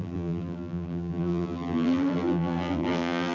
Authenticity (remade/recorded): remade